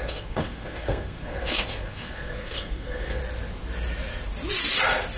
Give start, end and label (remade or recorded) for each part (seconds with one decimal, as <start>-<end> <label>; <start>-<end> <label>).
0.0-3.2 remade; 3.2-5.2 recorded